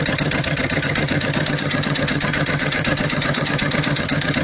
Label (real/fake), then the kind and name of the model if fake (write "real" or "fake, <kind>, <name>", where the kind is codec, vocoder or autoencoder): fake, vocoder, HiFi-GAN